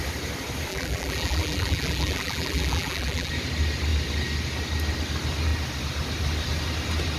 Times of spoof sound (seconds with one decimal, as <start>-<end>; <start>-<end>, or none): 0.7-3.3